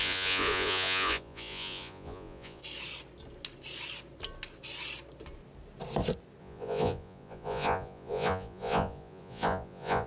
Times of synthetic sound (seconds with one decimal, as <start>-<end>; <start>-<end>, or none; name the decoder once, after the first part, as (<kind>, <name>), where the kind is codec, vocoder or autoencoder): 0.0-2.6 (vocoder, Vocos); 6.4-10.1